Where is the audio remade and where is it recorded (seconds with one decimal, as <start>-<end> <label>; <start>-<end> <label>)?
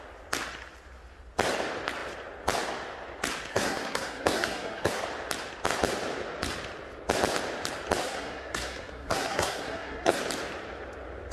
0.0-3.5 recorded; 3.5-5.0 remade; 5.0-8.0 recorded; 8.0-10.2 remade; 10.2-11.3 recorded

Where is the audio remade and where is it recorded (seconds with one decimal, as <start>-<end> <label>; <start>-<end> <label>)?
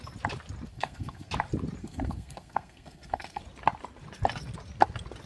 0.0-0.7 recorded; 0.7-1.3 remade; 1.3-1.8 recorded; 1.8-3.4 remade; 3.4-5.3 recorded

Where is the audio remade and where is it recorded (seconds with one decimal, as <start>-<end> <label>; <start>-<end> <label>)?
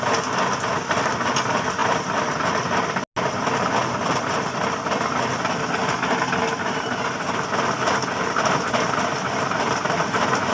0.0-10.5 recorded